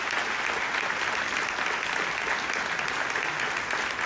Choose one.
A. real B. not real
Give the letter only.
A